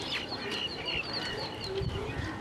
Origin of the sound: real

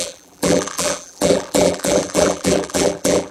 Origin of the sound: fake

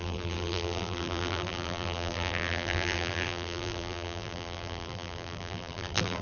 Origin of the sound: fake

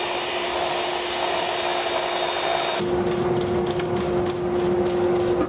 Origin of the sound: real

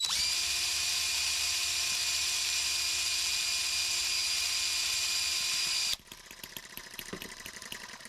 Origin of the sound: fake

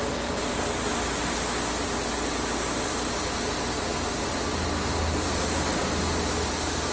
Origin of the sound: real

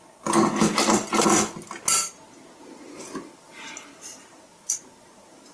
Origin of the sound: real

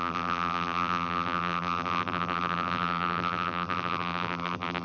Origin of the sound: fake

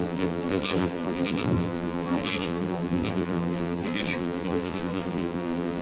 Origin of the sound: fake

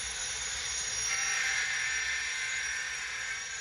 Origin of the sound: fake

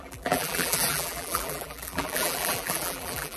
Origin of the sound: fake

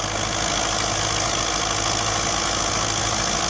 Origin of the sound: real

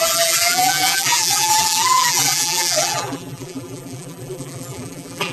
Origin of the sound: fake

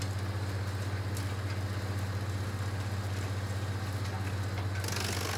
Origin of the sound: real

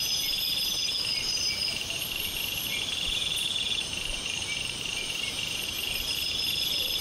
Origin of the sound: fake